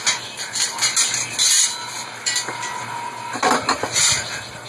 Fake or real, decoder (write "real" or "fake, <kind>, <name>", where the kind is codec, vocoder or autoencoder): real